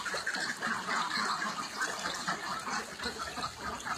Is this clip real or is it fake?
real